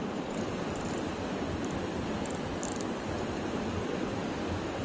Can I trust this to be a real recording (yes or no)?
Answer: yes